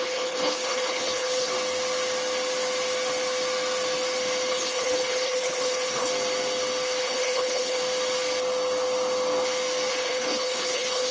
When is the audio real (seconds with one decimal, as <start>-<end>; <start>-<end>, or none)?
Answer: 1.5-4.5; 6.1-7.0; 7.8-9.9

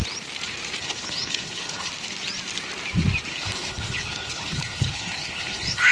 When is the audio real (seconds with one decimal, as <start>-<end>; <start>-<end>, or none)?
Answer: 0.0-0.8; 1.9-3.3